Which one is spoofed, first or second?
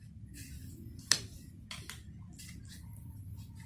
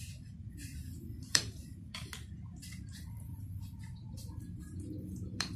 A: second